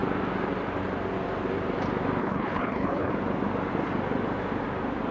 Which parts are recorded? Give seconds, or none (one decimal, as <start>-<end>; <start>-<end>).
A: 0.0-2.2; 3.1-5.1